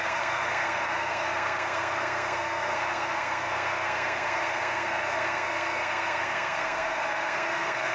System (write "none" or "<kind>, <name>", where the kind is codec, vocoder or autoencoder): codec, SNAC